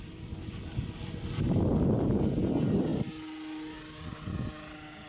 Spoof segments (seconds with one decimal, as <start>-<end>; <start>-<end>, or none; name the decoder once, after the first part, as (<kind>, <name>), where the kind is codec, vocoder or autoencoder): none